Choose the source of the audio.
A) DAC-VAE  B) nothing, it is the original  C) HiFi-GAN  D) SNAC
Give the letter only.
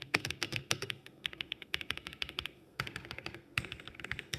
D